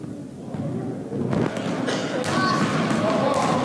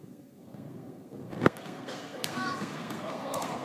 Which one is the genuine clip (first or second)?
first